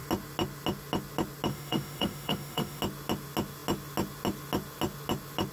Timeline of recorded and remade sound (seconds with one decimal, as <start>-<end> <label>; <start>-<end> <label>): 0.0-1.5 recorded; 1.5-2.8 remade; 2.8-5.5 recorded